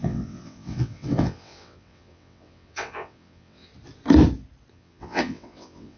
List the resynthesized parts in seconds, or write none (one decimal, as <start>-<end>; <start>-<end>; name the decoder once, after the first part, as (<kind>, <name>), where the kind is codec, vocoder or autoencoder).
0.0-3.7 (vocoder, WaveNeXt); 4.7-6.0